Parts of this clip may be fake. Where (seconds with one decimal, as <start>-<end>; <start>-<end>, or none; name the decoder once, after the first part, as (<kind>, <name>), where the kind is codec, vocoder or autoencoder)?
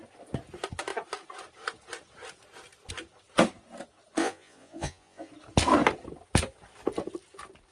4.2-5.3 (vocoder, Vocos)